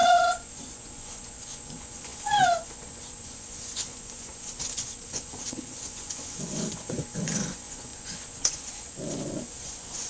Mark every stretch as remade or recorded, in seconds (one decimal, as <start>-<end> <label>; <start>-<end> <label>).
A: 0.0-10.1 remade